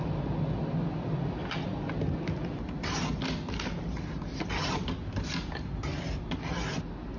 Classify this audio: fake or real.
real